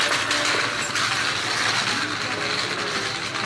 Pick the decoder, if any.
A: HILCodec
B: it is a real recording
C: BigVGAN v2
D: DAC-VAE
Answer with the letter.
B